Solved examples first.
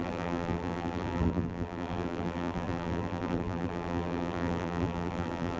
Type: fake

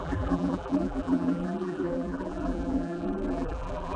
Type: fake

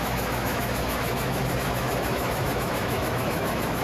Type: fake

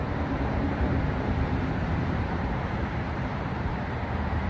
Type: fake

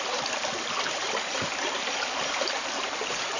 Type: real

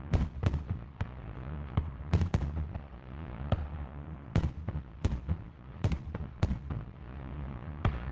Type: fake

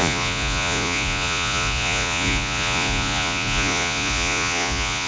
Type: fake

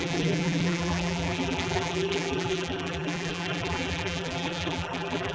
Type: fake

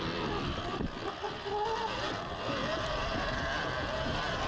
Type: real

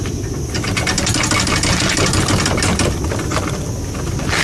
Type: real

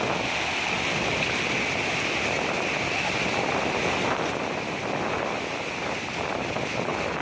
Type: real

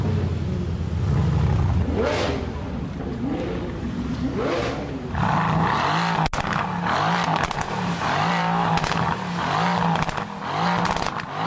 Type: real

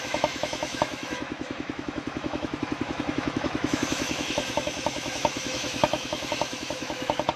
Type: fake